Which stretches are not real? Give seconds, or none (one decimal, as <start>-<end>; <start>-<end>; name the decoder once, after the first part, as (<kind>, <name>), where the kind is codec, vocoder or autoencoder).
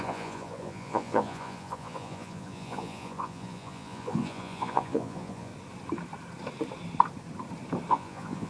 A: 0.0-5.5 (vocoder, Vocos); 7.9-8.5